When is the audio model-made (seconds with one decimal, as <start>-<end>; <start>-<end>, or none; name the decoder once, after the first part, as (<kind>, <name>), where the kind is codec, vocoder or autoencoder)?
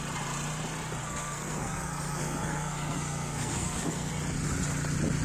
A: 1.0-4.1 (codec, SNAC)